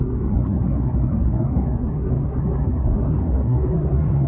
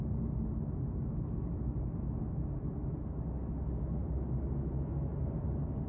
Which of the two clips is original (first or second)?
second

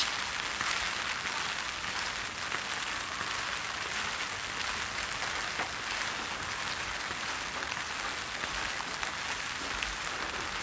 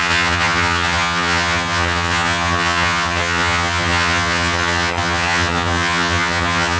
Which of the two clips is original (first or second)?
first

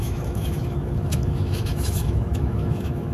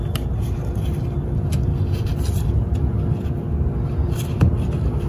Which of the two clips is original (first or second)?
second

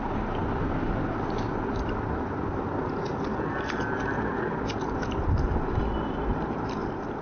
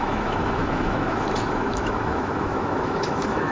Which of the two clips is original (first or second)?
first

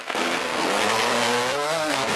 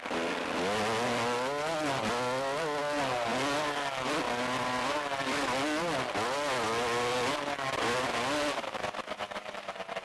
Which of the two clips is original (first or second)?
second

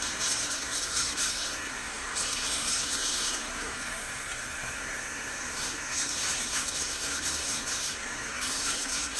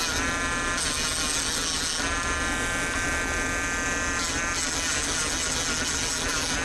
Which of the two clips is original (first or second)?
second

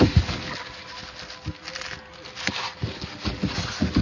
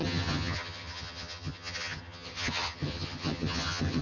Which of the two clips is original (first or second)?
first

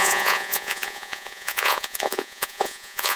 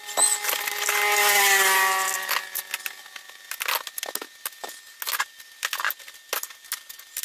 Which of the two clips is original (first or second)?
second